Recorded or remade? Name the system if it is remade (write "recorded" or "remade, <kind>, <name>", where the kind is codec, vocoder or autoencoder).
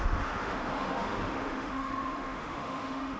remade, autoencoder, DAC-VAE